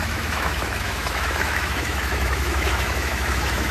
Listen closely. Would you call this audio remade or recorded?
remade